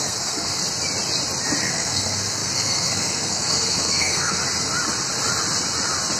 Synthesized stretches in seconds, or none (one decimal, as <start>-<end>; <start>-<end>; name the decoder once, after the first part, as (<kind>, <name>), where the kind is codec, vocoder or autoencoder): 0.0-0.6 (codec, SNAC); 1.6-4.4